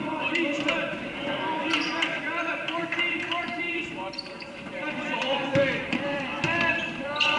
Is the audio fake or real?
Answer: fake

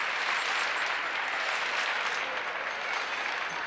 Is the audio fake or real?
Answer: real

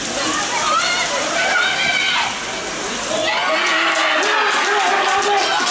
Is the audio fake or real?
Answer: real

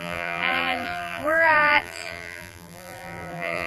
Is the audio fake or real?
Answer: fake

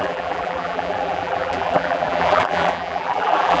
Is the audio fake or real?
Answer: fake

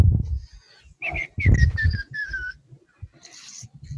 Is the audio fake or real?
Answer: real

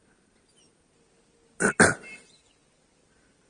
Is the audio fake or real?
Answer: fake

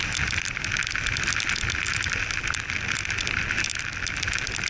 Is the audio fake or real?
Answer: real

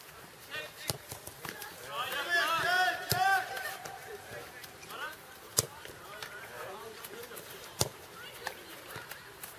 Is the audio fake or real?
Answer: fake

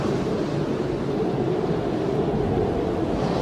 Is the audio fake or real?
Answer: real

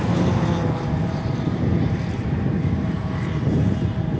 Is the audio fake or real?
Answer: fake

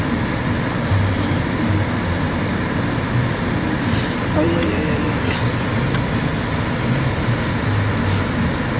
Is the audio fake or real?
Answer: real